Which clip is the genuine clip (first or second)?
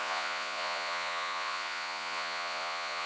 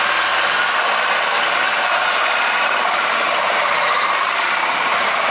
second